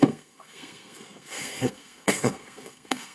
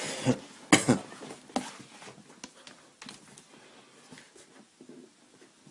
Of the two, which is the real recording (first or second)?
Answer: second